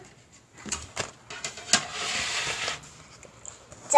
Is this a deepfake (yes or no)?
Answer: no